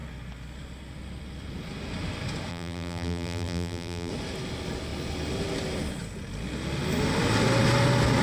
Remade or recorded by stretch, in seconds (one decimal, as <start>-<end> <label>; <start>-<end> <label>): 0.0-2.5 recorded; 2.5-4.1 remade; 4.1-8.2 recorded